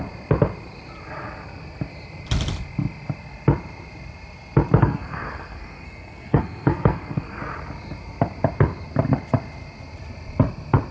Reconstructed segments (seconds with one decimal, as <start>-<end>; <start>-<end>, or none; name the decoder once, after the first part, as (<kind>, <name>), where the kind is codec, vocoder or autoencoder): 4.8-7.4 (codec, SNAC)